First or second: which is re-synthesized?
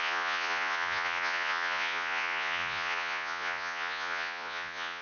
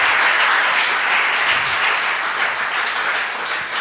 first